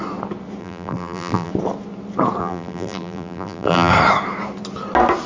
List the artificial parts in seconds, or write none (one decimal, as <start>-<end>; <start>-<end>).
0.6-1.5; 2.4-3.9